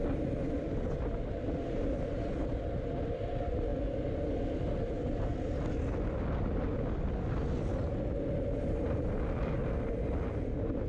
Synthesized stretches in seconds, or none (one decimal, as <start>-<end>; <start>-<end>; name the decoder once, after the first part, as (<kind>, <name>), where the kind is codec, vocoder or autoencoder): none